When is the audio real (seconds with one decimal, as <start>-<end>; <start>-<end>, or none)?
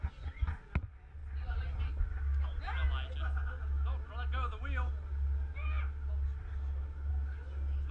0.0-7.9